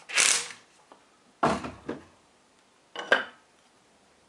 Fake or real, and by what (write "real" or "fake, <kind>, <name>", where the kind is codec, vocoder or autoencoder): fake, vocoder, BigVGAN v2